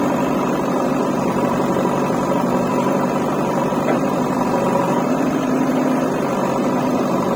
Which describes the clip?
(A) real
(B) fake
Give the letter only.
B